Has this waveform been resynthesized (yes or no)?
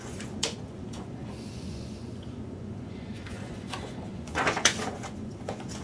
yes